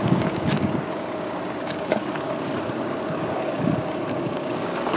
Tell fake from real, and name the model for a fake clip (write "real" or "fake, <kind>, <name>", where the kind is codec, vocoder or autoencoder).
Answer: fake, codec, DAC